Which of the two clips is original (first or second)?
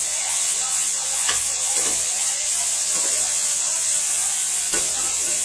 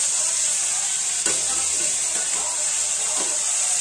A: second